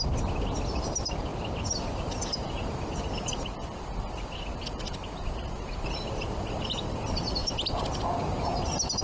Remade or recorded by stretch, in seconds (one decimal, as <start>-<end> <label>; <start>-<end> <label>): 0.0-7.4 recorded; 7.4-8.0 remade; 8.0-9.0 recorded